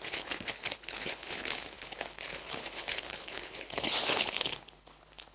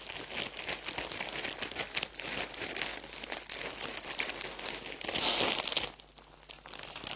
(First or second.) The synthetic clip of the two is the first